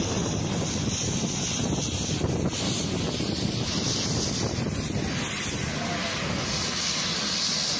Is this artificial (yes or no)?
no